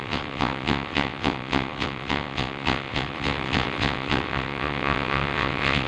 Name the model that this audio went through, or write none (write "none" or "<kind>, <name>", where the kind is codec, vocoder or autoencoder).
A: vocoder, WaveNeXt